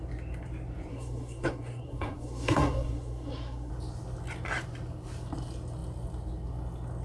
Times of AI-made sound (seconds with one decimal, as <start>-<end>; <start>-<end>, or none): 0.9-3.7